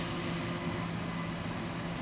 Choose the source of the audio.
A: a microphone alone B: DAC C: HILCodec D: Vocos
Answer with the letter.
A